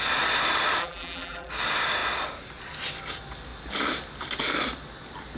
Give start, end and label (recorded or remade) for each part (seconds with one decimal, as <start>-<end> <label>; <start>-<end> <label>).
0.0-0.8 recorded; 0.8-1.5 remade; 1.5-5.4 recorded